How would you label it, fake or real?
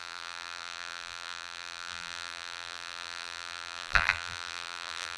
fake